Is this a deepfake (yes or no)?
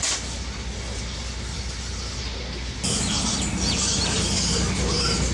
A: no